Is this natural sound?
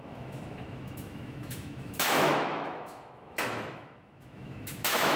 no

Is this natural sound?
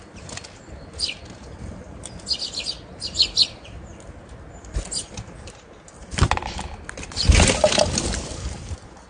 yes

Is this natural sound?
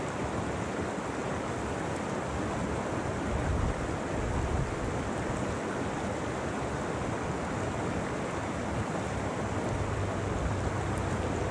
yes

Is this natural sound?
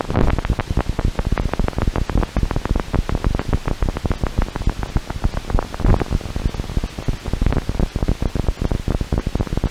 yes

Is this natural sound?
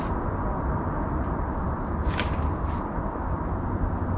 yes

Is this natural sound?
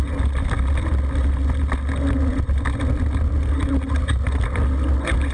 yes